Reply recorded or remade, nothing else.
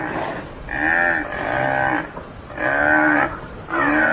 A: recorded